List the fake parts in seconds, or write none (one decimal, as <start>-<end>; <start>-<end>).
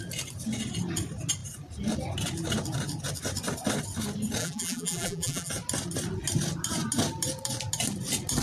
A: 4.4-5.5